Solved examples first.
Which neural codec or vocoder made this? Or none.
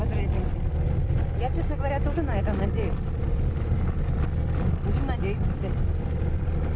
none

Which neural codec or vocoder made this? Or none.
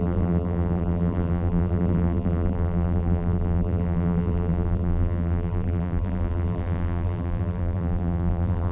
vocoder, BigVGAN v2